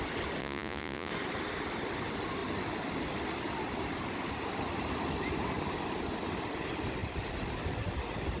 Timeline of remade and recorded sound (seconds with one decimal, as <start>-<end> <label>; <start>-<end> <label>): 0.0-0.4 recorded; 0.4-1.1 remade; 1.1-8.4 recorded